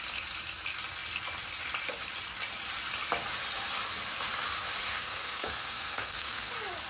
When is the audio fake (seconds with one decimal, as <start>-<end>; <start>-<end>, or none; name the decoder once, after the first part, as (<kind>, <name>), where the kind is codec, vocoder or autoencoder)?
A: 4.8-6.5 (codec, SNAC)